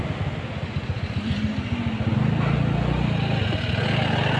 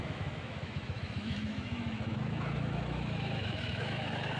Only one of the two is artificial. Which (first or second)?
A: second